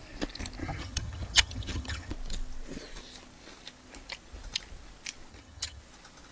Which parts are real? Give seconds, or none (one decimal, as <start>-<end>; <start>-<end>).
0.0-0.6; 2.1-5.3; 5.8-6.3